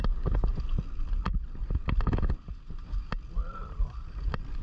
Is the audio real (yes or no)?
yes